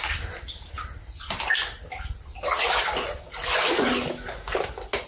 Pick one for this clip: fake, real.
real